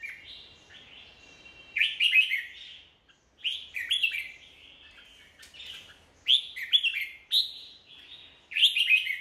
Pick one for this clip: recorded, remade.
recorded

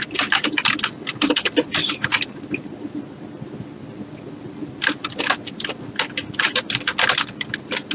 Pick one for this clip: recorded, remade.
remade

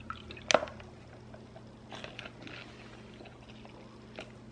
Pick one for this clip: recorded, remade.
recorded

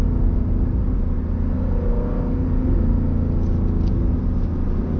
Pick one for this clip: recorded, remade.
recorded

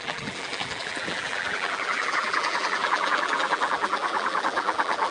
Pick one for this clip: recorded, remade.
remade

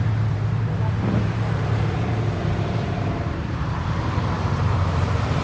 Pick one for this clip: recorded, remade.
remade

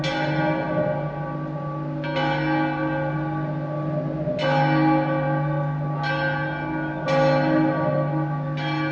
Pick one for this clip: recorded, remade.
recorded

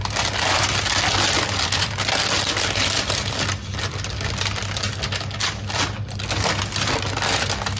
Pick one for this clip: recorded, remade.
recorded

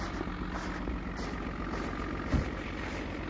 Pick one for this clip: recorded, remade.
recorded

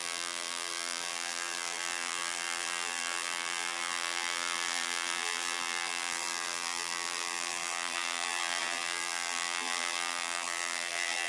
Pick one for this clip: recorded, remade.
remade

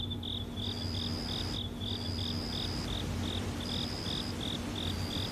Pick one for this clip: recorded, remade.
recorded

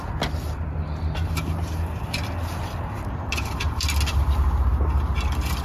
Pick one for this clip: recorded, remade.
recorded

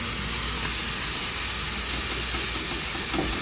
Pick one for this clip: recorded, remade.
recorded